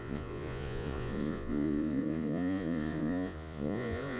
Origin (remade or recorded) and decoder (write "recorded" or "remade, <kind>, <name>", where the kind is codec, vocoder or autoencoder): remade, vocoder, Vocos